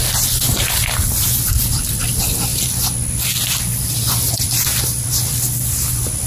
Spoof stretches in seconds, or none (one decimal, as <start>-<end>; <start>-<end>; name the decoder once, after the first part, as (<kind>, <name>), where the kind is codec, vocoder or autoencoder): 1.2-2.0 (vocoder, BigVGAN v2)